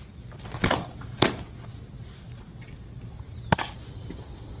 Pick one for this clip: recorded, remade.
recorded